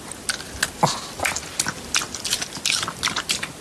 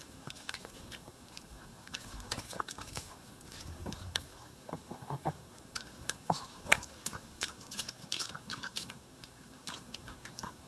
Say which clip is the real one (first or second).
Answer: first